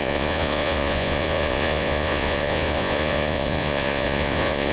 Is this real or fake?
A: fake